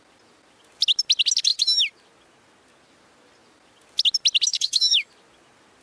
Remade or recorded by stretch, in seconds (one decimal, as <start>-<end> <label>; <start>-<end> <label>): 0.0-4.5 recorded; 4.5-5.1 remade; 5.1-5.8 recorded